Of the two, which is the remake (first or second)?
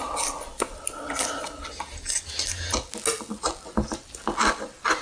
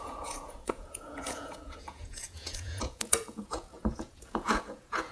second